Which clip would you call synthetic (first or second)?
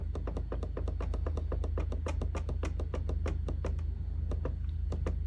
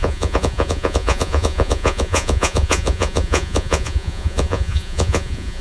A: second